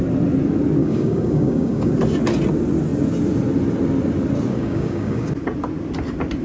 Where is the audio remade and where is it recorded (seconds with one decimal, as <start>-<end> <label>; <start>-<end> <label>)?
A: 0.0-0.8 recorded; 0.8-1.9 remade; 1.9-4.5 recorded; 4.5-5.3 remade; 5.3-6.4 recorded